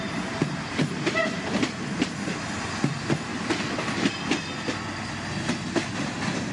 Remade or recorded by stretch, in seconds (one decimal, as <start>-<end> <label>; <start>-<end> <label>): 0.0-6.5 recorded